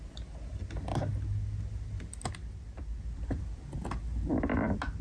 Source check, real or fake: real